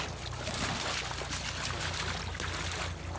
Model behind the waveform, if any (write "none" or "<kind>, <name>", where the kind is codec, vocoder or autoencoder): none